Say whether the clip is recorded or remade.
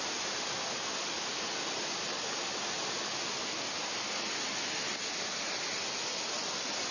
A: recorded